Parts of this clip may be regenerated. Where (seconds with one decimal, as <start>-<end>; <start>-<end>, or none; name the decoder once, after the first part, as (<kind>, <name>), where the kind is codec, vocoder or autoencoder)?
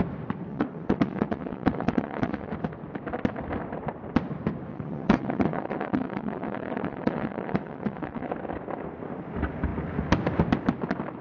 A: 0.5-2.5 (vocoder, WaveNeXt); 4.7-8.3